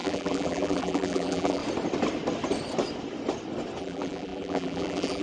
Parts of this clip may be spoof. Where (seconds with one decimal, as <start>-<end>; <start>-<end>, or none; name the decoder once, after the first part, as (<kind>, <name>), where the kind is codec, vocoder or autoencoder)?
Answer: 0.0-1.6 (vocoder, BigVGAN v2); 3.8-5.2